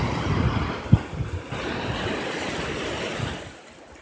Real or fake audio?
real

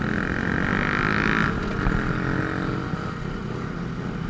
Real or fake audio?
real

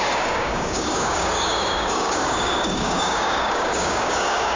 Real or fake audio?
fake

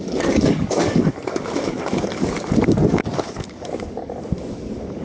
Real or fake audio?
fake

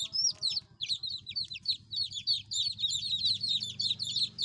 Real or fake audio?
real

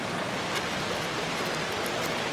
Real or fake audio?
real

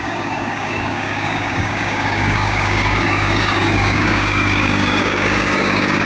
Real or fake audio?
fake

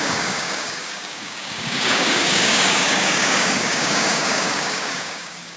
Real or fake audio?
fake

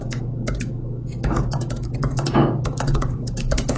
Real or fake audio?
fake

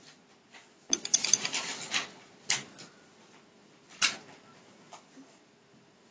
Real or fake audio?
real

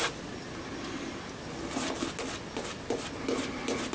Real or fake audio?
real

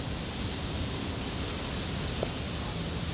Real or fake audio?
real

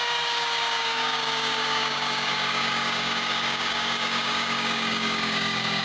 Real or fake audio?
fake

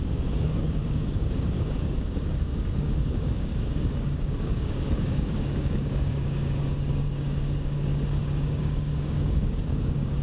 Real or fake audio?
fake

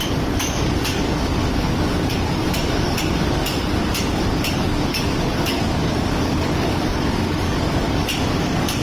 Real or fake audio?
fake